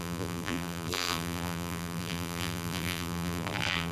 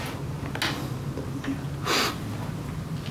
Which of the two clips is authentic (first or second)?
second